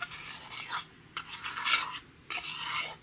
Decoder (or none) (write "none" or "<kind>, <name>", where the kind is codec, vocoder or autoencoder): none